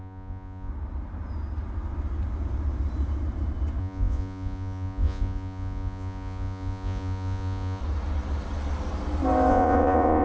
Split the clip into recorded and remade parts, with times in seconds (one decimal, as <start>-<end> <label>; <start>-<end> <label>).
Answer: 0.0-0.7 remade; 0.7-3.8 recorded; 3.8-7.8 remade; 7.8-9.5 recorded; 9.5-10.2 remade